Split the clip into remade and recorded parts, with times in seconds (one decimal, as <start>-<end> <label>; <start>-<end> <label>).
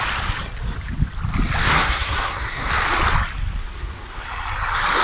0.0-1.6 recorded; 1.6-2.7 remade; 2.7-3.6 recorded; 3.6-4.2 remade; 4.2-5.0 recorded